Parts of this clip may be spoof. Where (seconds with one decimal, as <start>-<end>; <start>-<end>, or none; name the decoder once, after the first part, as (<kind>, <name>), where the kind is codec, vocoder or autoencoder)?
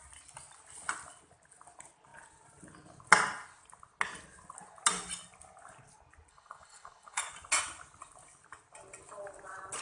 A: 6.3-7.2 (codec, HILCodec)